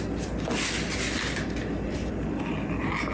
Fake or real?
real